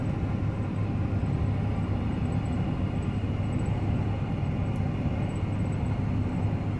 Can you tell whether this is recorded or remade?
recorded